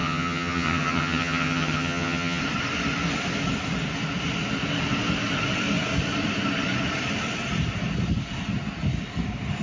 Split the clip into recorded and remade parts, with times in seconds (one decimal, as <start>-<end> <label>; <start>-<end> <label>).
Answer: 0.0-2.4 remade; 2.4-9.6 recorded